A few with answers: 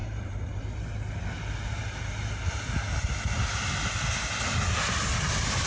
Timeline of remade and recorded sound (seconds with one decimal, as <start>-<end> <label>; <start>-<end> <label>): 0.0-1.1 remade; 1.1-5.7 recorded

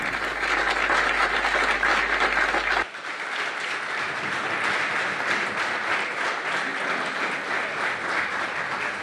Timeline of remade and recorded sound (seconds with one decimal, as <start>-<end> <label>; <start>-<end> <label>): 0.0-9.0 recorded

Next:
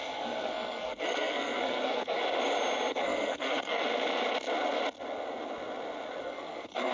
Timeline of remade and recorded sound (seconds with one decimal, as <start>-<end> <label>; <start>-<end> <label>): 0.0-2.2 remade; 2.2-2.9 recorded; 2.9-3.8 remade; 3.8-6.2 recorded; 6.2-6.9 remade

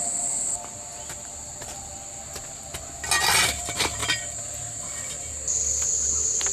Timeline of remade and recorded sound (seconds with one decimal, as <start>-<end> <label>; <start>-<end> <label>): 0.0-0.9 recorded; 0.9-1.9 remade; 1.9-4.0 recorded; 4.0-5.3 remade; 5.3-6.5 recorded